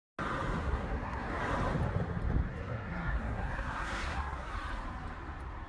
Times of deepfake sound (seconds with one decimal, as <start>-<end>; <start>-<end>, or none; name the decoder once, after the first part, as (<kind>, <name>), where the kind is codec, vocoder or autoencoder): 0.6-1.4 (codec, SNAC); 2.5-4.5